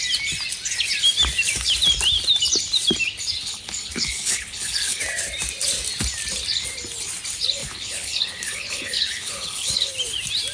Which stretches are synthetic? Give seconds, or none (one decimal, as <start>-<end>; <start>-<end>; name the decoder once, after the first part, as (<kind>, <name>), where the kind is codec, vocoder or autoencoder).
3.4-5.0 (codec, HILCodec); 7.6-9.9